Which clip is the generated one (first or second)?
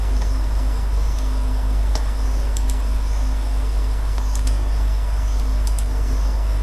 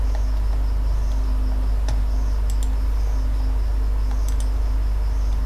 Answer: first